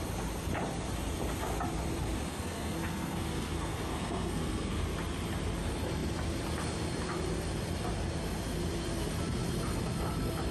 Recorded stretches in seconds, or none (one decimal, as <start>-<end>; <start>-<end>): 0.0-2.3; 4.8-10.5